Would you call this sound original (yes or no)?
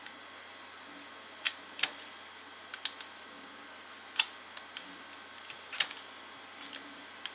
yes